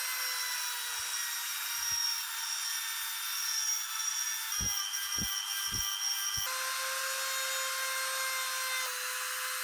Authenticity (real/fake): real